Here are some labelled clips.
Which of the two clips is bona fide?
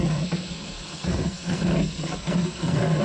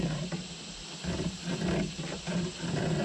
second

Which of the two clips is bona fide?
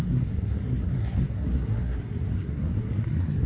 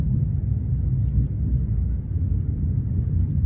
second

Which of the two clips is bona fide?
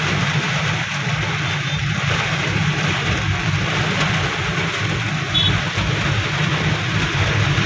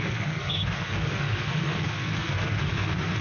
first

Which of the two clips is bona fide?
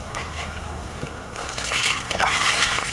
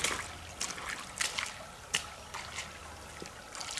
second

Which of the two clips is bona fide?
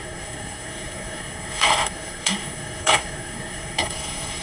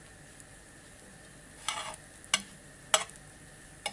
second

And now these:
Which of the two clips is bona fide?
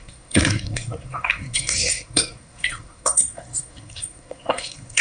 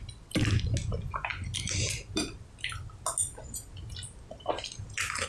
second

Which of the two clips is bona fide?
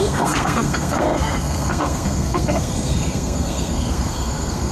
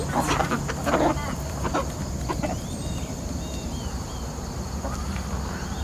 second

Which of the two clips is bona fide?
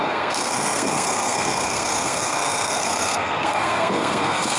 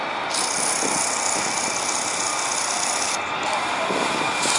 second